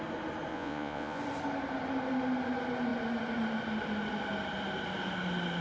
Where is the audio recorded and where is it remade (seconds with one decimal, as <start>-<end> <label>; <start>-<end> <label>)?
0.0-0.5 recorded; 0.5-1.2 remade; 1.2-5.6 recorded